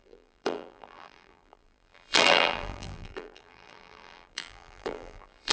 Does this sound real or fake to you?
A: fake